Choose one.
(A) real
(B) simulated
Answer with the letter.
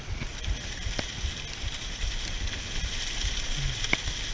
A